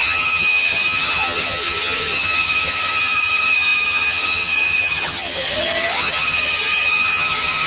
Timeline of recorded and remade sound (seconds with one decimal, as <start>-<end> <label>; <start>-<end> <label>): 0.0-7.7 remade